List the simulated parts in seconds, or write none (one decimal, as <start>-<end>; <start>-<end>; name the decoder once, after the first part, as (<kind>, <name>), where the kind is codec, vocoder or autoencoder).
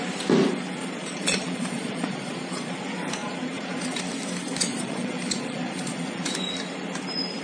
0.8-2.8 (vocoder, Vocos); 3.2-4.0; 4.7-6.3